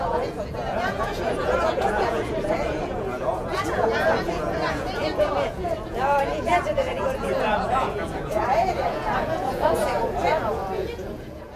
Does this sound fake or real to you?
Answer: fake